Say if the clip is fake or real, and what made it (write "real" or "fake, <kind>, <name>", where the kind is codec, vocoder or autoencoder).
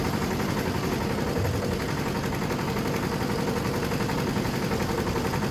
real